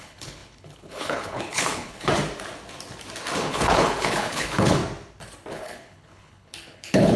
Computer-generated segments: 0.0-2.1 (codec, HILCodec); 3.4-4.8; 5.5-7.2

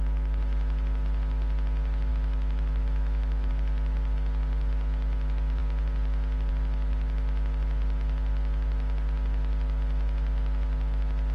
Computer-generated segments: 2.1-3.5 (autoencoder, DAC-VAE)

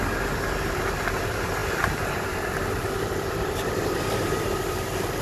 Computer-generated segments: 1.6-4.7 (vocoder, BigVGAN v2)

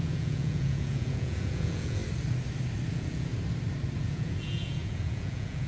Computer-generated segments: 0.0-2.0 (vocoder, Vocos); 2.9-3.3; 4.0-5.7

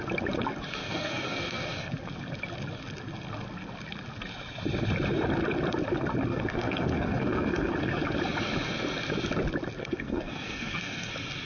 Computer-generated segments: 0.8-1.9 (codec, SNAC); 6.3-7.7; 9.8-11.1

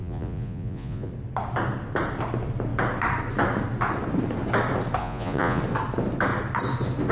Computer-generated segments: 0.0-1.1 (vocoder, Vocos); 5.0-5.6